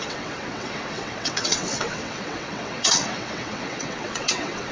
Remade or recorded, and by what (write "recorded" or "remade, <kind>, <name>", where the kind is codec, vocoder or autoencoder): remade, vocoder, WaveNeXt